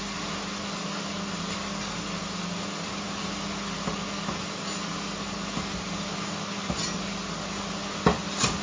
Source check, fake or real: real